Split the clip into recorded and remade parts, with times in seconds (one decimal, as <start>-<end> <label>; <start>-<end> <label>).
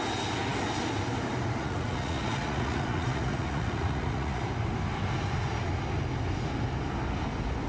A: 0.0-1.6 recorded; 1.6-4.4 remade; 4.4-7.7 recorded